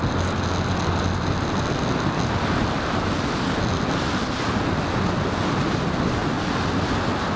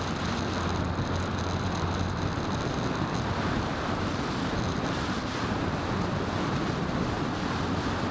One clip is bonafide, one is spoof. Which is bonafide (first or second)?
first